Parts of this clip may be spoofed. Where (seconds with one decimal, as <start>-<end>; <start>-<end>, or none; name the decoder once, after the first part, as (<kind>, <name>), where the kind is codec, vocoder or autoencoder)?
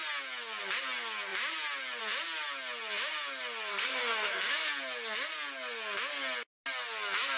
3.7-4.7 (codec, SNAC)